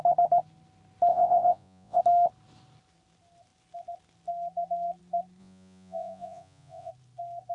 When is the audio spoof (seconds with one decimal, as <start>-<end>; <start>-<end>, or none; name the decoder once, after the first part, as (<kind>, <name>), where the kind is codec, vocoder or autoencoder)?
1.1-2.0 (vocoder, Vocos); 5.4-6.9